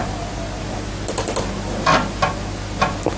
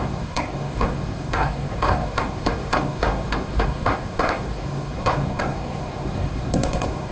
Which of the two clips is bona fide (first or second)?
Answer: first